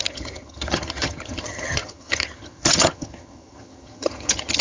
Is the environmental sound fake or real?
fake